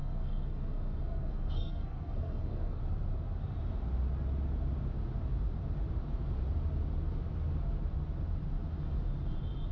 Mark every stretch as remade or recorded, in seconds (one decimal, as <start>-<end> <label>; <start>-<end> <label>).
0.0-2.8 remade; 2.8-9.7 recorded